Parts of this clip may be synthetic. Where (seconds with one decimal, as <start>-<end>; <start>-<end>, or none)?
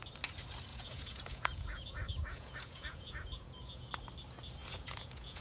0.7-3.9; 4.6-5.4